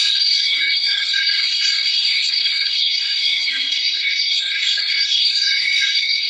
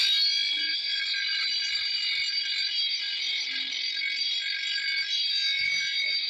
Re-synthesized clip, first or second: first